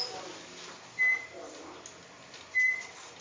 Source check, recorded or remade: recorded